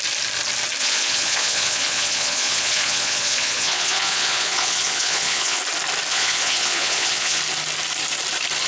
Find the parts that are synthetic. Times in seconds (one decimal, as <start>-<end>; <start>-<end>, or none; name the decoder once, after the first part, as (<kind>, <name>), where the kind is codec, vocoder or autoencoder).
0.8-5.6 (vocoder, Vocos); 6.1-7.4